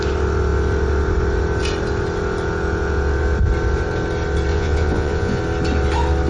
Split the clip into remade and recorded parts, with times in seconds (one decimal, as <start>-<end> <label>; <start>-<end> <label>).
0.0-4.5 recorded; 4.5-5.4 remade; 5.4-6.3 recorded